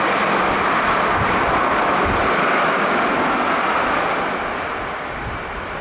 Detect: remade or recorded recorded